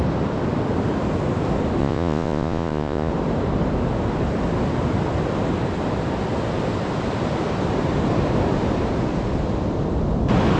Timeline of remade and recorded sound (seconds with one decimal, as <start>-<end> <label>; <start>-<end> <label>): 0.0-1.8 recorded; 1.8-3.1 remade; 3.1-10.6 recorded